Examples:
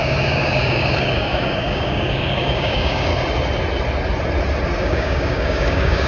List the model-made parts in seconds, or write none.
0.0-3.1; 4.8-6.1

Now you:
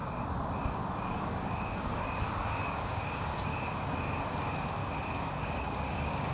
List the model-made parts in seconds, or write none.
0.6-3.5; 4.3-4.8; 5.4-6.3